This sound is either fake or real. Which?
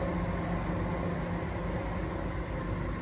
real